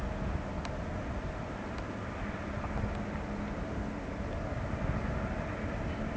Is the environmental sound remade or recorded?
recorded